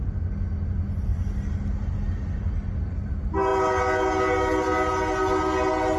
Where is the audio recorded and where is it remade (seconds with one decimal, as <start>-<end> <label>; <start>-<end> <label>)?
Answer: 0.0-6.0 recorded